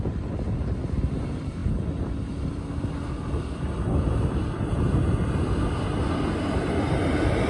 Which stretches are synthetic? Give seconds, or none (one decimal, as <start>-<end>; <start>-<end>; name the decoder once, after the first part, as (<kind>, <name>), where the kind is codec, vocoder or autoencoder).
none